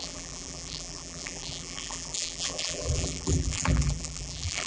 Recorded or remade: remade